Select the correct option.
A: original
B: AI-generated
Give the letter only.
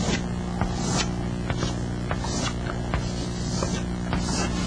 A